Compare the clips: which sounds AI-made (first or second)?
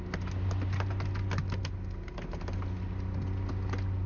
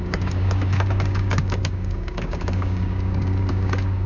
second